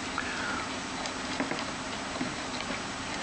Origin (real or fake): real